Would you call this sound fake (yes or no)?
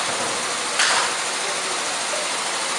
no